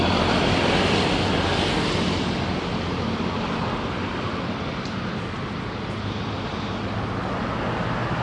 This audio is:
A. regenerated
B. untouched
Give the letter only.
B